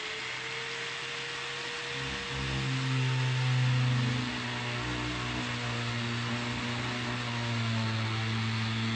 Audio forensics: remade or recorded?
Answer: recorded